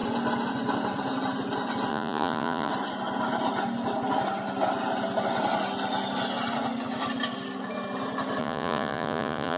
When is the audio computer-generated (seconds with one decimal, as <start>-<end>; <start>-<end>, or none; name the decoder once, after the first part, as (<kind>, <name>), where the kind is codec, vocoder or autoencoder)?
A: 1.9-2.7 (vocoder, Vocos); 8.4-9.6